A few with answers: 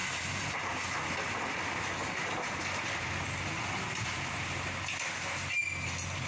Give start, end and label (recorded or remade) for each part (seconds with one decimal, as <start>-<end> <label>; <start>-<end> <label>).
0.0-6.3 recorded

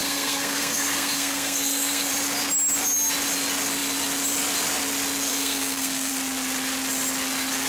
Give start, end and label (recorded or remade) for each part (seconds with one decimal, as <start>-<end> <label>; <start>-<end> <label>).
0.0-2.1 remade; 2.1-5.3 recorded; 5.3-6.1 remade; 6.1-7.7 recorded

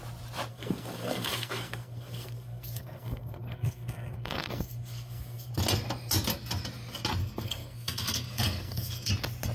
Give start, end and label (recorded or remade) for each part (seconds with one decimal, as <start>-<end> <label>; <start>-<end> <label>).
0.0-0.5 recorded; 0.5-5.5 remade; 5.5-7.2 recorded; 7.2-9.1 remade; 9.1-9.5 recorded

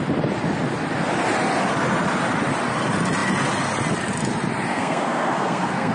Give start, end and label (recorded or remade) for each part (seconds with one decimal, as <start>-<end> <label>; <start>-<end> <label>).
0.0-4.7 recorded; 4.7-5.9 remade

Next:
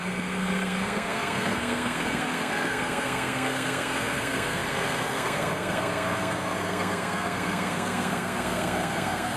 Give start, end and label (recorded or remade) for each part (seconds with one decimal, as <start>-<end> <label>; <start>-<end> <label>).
0.0-9.4 remade

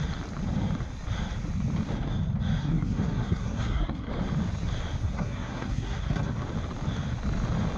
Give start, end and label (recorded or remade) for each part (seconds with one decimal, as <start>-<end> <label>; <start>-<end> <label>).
0.0-2.6 recorded; 2.6-4.1 remade; 4.1-5.0 recorded; 5.0-6.3 remade; 6.3-7.8 recorded